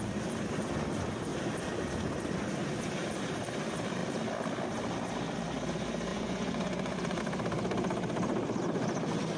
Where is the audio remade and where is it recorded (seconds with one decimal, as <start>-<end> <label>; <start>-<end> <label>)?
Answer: 0.0-6.1 recorded; 6.1-7.2 remade; 7.2-9.4 recorded